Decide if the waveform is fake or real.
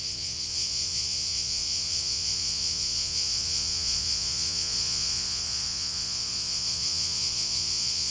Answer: fake